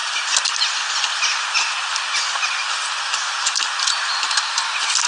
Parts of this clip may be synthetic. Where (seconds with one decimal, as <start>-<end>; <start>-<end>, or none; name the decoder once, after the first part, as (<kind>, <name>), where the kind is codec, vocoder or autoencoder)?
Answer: none